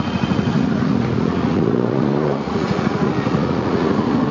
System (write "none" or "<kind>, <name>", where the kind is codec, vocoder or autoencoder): vocoder, Vocos